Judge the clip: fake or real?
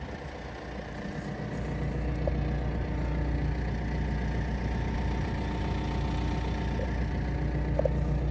real